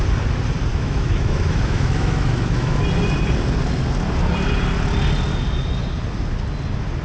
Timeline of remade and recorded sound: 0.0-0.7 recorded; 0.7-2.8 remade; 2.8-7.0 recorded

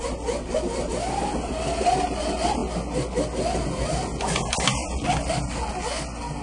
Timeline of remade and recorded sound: 0.0-6.4 recorded

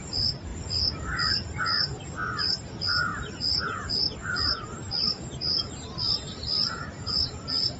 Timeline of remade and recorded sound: 0.0-7.8 recorded

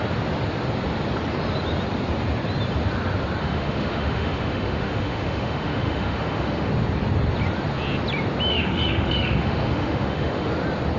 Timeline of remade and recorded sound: 0.0-3.4 recorded; 3.4-6.7 remade; 6.7-8.5 recorded; 8.5-10.5 remade; 10.5-11.0 recorded

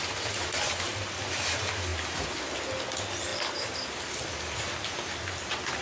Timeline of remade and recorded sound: 0.0-5.8 recorded